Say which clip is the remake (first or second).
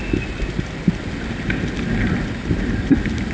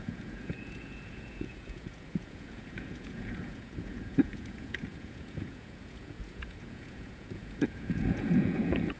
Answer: second